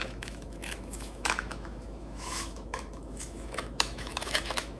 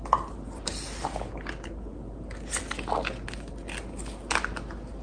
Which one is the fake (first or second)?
first